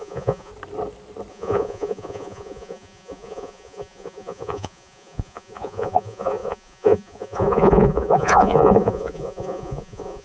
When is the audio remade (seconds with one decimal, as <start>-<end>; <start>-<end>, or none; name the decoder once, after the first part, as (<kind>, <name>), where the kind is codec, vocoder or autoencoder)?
0.0-0.5 (vocoder, Vocos); 1.3-10.2